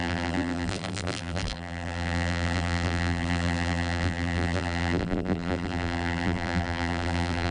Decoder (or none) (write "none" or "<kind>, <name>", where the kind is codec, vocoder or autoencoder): vocoder, BigVGAN v2